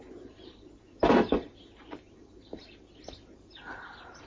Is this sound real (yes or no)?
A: no